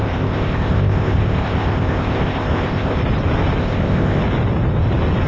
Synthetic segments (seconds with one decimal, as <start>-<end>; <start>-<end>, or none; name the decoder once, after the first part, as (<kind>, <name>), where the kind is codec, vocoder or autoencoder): 0.0-3.0 (codec, ZipCodec); 3.6-4.2

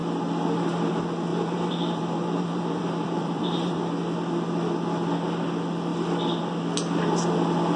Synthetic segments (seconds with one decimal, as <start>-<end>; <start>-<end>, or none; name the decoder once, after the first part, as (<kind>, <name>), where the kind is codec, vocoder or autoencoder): 1.3-3.9 (vocoder, BigVGAN v2)

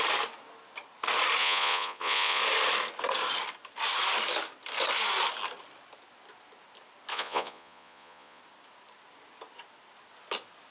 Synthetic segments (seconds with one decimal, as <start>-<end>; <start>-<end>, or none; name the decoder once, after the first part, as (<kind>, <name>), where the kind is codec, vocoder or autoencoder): 1.4-2.4 (vocoder, Vocos); 7.1-8.4

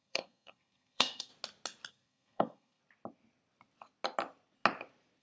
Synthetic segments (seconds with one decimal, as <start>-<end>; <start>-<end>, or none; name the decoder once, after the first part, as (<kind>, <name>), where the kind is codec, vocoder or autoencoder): 0.0-1.3 (codec, SNAC); 1.9-2.8

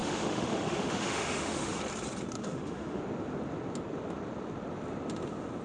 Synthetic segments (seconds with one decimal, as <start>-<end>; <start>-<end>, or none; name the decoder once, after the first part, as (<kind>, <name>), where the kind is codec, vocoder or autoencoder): 0.0-1.8 (autoencoder, DAC-VAE); 2.4-3.0